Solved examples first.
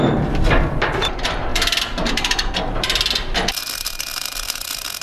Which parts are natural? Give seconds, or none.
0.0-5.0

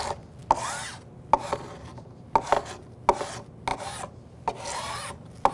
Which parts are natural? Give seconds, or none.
0.0-5.5

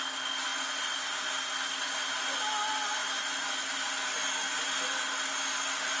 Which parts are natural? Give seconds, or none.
0.0-6.0

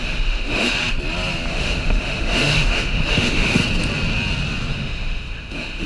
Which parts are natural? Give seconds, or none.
0.8-1.5; 3.6-4.7

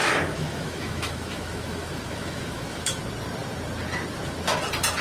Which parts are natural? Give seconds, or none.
3.0-5.0

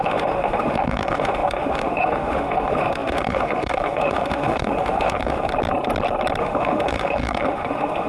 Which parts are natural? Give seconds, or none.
5.5-6.4

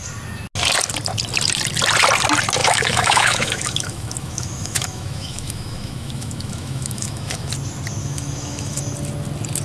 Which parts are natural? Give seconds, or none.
0.0-2.6; 7.5-8.0; 8.8-9.6